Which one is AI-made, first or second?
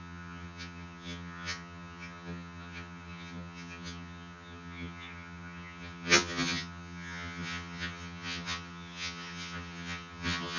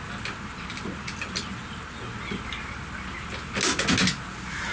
first